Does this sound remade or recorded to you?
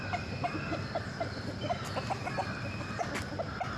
recorded